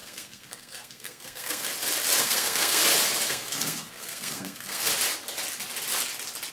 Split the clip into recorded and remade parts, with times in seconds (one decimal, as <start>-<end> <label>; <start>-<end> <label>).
0.0-1.7 remade; 1.7-2.2 recorded; 2.2-2.8 remade; 2.8-3.3 recorded; 3.3-4.9 remade; 4.9-6.5 recorded